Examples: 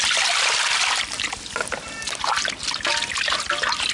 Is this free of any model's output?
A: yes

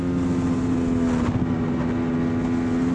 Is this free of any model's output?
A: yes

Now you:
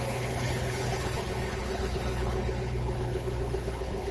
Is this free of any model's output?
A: no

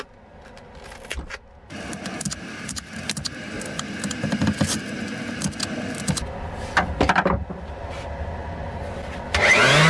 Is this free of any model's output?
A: yes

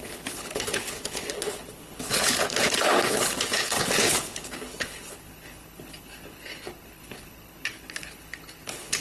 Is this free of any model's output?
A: no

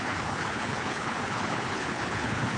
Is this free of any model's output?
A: no